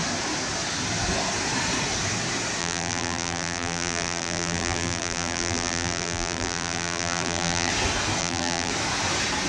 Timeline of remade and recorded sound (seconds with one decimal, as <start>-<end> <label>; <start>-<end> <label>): 0.0-2.6 recorded; 2.6-7.7 remade; 7.7-8.2 recorded; 8.2-8.7 remade; 8.7-9.5 recorded